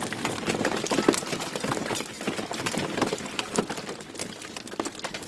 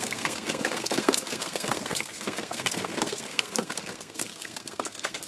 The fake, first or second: second